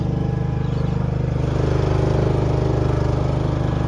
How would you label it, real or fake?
real